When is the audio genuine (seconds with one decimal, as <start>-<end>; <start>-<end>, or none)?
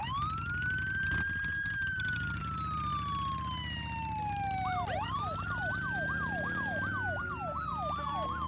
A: 2.4-7.7